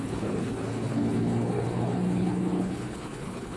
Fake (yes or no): yes